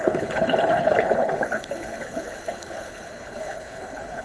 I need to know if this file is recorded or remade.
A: remade